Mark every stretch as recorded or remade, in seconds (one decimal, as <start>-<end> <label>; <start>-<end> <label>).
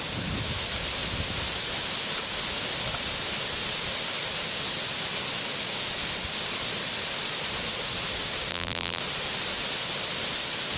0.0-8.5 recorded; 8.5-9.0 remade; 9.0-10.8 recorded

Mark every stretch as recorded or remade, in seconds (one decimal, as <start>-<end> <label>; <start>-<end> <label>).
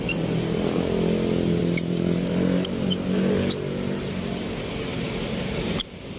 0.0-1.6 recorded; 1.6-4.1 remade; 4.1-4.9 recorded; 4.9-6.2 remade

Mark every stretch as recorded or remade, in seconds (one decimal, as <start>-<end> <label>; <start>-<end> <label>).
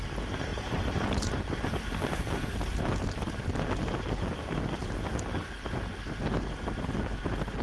0.0-0.5 recorded; 0.5-2.3 remade; 2.3-7.6 recorded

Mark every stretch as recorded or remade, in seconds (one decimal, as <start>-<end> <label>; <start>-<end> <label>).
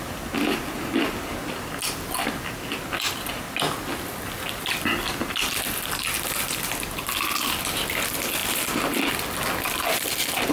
0.0-10.5 recorded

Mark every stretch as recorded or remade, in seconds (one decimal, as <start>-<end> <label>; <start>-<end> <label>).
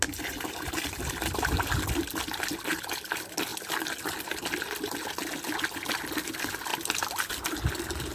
0.0-6.7 recorded; 6.7-7.3 remade; 7.3-8.1 recorded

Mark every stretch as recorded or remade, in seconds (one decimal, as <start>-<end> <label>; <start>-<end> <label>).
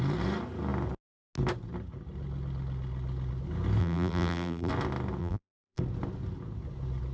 0.0-3.8 recorded; 3.8-4.7 remade; 4.7-5.2 recorded; 5.2-5.8 remade; 5.8-7.1 recorded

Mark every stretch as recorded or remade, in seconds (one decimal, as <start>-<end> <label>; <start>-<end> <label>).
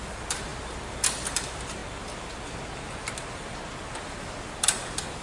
0.0-1.8 remade; 1.8-4.0 recorded; 4.0-5.2 remade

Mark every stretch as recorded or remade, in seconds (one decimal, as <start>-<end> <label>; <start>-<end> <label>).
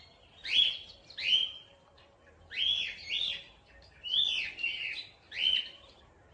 0.0-6.3 recorded